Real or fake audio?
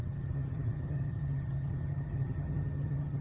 fake